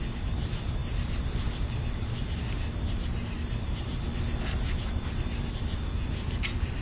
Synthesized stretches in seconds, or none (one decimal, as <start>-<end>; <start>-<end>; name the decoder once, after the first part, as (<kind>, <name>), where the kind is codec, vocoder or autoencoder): 0.0-6.8 (vocoder, BigVGAN v2)